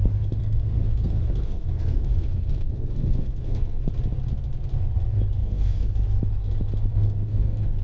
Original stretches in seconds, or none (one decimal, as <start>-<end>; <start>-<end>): 0.0-0.4; 3.8-5.4; 5.9-6.9